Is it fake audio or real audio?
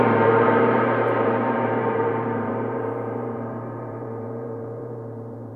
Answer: fake